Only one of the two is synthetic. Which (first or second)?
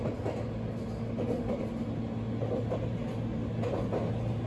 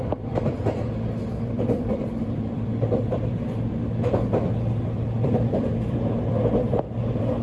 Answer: second